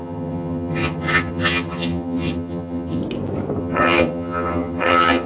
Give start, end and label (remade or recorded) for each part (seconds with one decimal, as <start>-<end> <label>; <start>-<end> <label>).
0.0-3.0 remade; 3.0-3.6 recorded; 3.6-5.3 remade